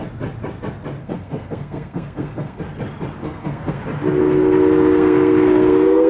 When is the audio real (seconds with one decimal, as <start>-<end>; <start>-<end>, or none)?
0.0-1.0; 2.6-3.2; 3.8-4.2